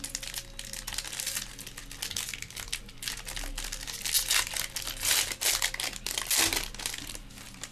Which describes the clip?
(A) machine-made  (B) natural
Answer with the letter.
B